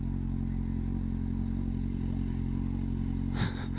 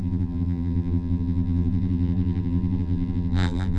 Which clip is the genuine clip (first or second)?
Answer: first